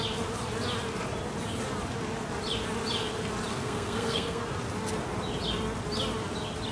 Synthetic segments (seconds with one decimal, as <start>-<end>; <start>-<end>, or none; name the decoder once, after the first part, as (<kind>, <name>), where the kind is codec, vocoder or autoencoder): 3.5-4.4 (codec, SNAC)